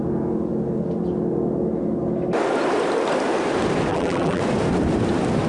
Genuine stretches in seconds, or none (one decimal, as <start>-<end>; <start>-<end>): 0.0-3.9; 4.4-5.5